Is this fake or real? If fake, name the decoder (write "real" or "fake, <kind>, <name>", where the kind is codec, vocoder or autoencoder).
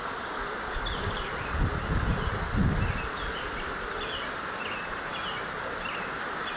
real